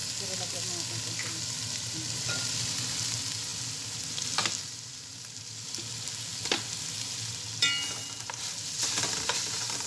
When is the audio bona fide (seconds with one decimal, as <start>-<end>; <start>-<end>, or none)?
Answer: 0.0-9.9